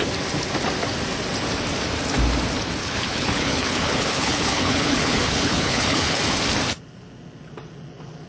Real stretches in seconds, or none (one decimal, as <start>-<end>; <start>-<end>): 0.0-2.8; 6.2-8.3